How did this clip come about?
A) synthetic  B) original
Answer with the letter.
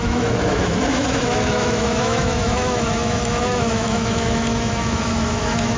A